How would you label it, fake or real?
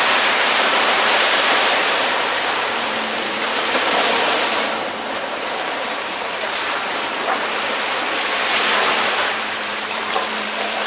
fake